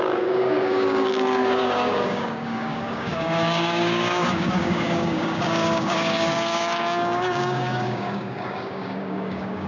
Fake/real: fake